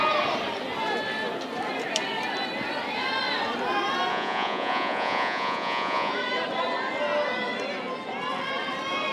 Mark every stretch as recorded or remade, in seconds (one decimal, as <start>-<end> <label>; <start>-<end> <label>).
0.0-4.1 recorded; 4.1-6.1 remade; 6.1-9.1 recorded